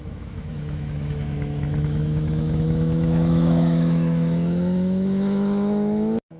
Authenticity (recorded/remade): remade